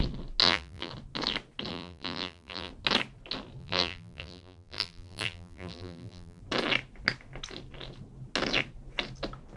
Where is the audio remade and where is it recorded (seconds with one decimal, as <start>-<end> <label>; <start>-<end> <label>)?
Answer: 0.0-0.4 recorded; 0.4-0.9 remade; 0.9-1.7 recorded; 1.7-2.7 remade; 2.7-3.6 recorded; 3.6-6.4 remade; 6.4-9.6 recorded